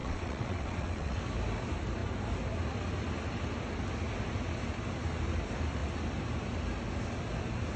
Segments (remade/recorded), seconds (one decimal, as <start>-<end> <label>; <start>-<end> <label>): 0.0-1.2 remade; 1.2-7.8 recorded